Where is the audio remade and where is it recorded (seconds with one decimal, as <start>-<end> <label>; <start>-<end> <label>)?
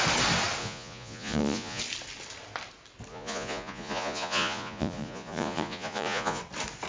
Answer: 0.0-0.6 recorded; 0.6-1.8 remade; 1.8-3.1 recorded; 3.1-6.4 remade; 6.4-6.9 recorded